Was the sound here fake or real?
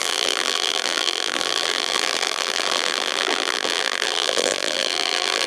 fake